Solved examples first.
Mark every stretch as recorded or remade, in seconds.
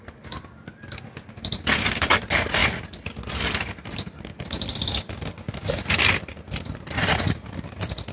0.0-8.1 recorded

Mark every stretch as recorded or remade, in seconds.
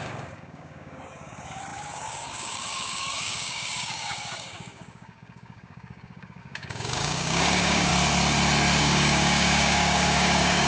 0.0-7.9 remade; 7.9-8.8 recorded; 8.8-10.7 remade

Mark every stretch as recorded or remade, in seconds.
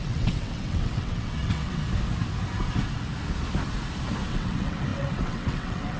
0.0-1.8 remade; 1.8-4.3 recorded; 4.3-6.0 remade